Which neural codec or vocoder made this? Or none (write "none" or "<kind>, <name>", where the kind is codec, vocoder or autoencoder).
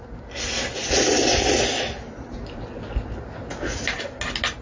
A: none